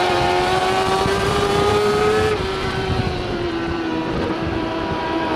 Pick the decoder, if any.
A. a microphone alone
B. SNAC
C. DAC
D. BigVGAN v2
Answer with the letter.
D